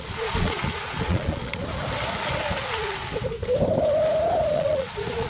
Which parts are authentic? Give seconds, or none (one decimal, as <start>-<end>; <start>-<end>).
1.6-4.5